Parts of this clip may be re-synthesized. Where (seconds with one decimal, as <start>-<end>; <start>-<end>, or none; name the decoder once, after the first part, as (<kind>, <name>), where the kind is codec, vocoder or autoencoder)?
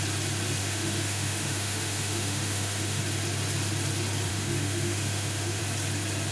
0.6-3.0 (autoencoder, DAC-VAE); 4.3-5.6